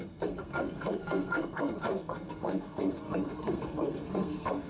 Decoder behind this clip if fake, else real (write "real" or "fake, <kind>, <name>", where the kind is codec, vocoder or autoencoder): fake, codec, SNAC